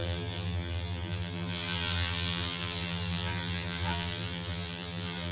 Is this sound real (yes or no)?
no